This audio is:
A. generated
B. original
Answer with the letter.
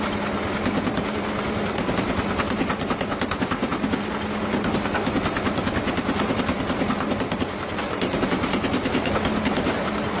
B